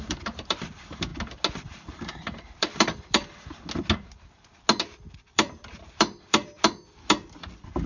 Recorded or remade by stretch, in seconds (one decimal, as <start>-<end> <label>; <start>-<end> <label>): 0.0-1.1 remade; 1.1-1.7 recorded; 1.7-3.2 remade; 3.2-4.8 recorded; 4.8-7.9 remade